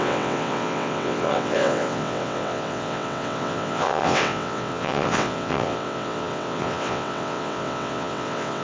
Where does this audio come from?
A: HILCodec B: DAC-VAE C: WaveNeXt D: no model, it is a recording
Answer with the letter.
C